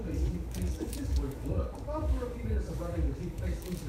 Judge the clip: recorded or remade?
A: remade